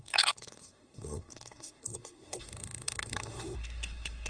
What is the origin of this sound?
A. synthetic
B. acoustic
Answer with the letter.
A